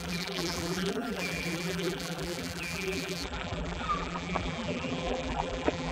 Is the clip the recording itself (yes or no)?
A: no